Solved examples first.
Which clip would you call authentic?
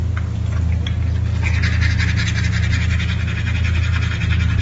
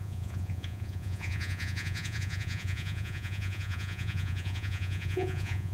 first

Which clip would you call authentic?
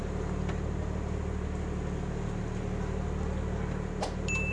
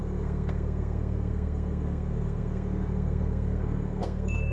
first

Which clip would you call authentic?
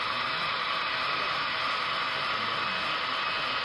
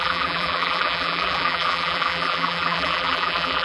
first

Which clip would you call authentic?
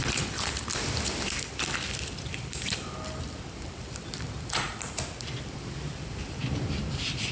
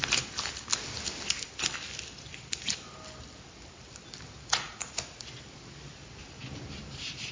second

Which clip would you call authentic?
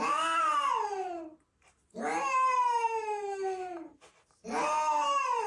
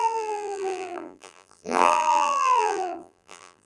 first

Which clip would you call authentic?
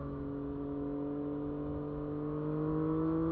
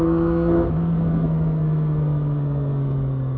first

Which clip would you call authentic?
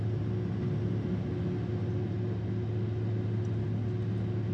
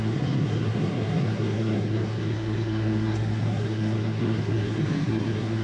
first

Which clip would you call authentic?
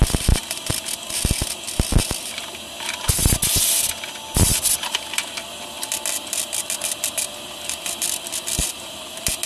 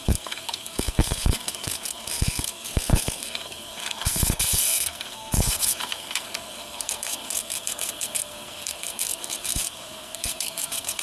first